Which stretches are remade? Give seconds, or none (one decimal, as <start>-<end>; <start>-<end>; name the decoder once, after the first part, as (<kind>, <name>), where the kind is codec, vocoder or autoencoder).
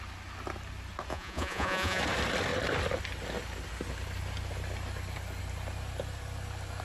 1.1-2.0 (vocoder, Vocos)